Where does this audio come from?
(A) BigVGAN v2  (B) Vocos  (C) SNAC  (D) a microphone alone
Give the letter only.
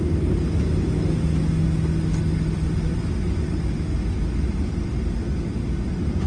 D